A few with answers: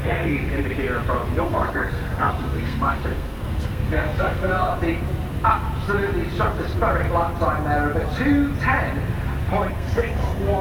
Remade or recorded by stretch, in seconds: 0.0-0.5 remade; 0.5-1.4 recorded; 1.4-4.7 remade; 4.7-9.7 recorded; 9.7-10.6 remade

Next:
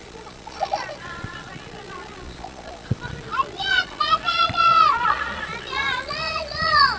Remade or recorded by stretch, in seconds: 0.0-7.0 remade

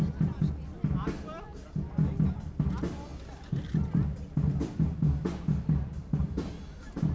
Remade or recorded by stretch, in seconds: 0.0-3.1 recorded; 3.1-4.8 remade; 4.8-6.0 recorded; 6.0-6.6 remade; 6.6-7.1 recorded

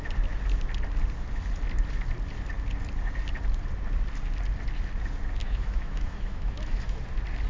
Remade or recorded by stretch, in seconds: 0.0-5.4 recorded; 5.4-7.0 remade; 7.0-7.5 recorded